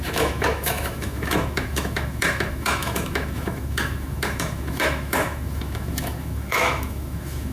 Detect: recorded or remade remade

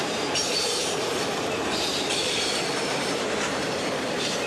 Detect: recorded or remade remade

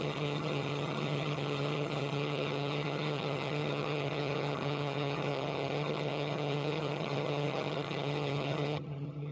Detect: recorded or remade remade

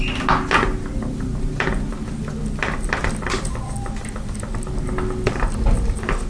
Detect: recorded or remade recorded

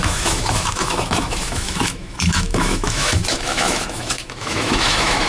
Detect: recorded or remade remade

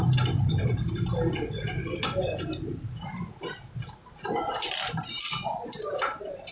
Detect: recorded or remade recorded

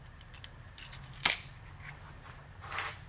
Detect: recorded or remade recorded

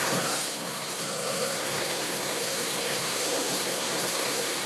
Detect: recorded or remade remade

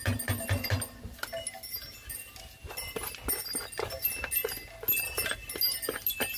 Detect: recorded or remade recorded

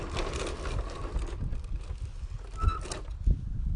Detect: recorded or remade recorded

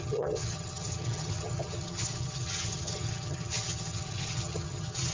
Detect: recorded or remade remade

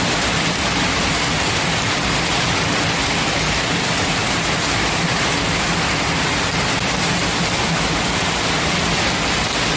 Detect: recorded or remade recorded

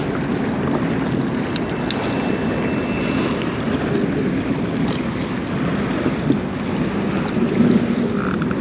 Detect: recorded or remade recorded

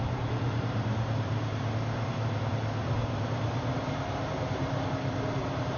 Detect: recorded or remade remade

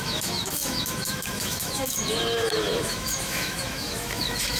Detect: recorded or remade remade